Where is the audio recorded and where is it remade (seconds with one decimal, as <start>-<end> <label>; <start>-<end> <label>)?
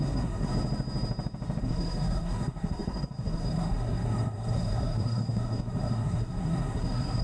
0.0-0.5 remade; 0.5-1.6 recorded; 1.6-7.2 remade